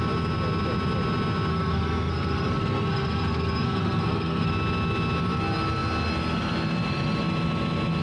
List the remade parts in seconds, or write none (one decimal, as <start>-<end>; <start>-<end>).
1.5-4.5